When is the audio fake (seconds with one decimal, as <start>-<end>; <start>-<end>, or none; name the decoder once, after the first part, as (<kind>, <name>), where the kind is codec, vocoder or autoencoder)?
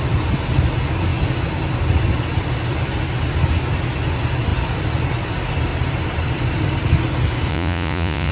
7.5-8.3 (vocoder, Vocos)